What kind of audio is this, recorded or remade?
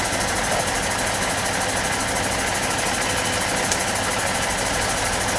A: recorded